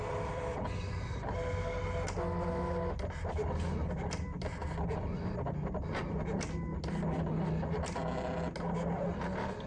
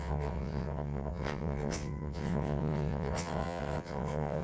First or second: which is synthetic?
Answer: second